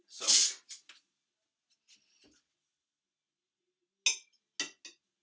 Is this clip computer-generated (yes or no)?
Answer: no